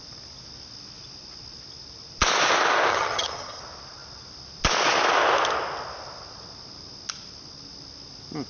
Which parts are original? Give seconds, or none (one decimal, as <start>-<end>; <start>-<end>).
0.0-2.9; 3.6-8.5